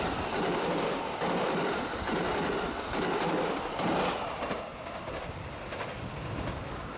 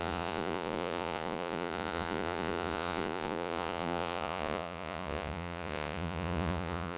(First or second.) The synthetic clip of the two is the second